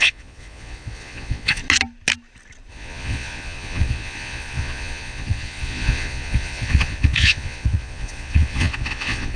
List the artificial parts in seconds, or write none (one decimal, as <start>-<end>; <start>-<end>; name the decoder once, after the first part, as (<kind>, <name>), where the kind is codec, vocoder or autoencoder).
0.0-1.6 (vocoder, Vocos); 2.7-9.4

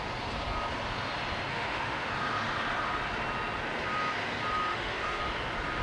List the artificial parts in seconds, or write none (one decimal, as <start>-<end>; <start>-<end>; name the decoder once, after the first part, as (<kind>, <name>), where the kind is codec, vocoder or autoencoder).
1.5-2.1 (autoencoder, DAC-VAE); 4.7-5.2